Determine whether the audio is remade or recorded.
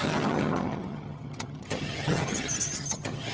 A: remade